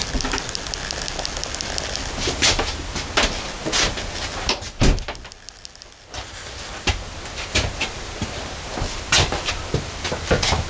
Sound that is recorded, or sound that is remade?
recorded